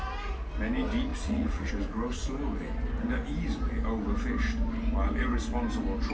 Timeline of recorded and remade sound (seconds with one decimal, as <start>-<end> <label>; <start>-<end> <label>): 0.0-1.1 recorded; 1.1-1.7 remade; 1.7-6.1 recorded

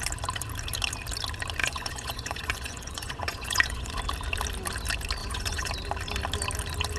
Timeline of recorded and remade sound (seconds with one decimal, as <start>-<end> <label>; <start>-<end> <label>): 0.0-1.6 recorded; 1.6-3.9 remade; 3.9-5.2 recorded; 5.2-5.7 remade; 5.7-7.0 recorded